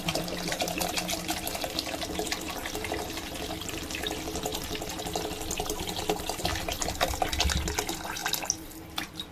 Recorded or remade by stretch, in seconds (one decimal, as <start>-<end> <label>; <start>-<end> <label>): 0.0-9.3 recorded